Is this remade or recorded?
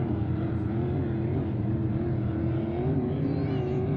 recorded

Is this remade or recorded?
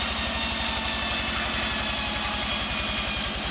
recorded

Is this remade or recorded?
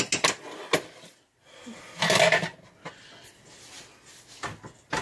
recorded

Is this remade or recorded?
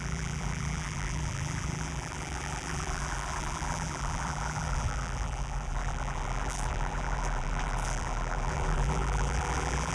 remade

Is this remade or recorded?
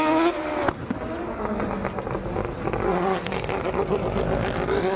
recorded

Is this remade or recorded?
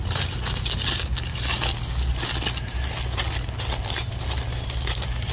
recorded